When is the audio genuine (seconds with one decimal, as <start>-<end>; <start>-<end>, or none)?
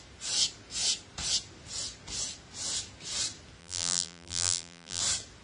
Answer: 0.0-3.6; 5.0-5.4